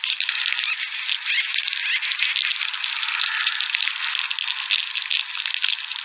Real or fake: real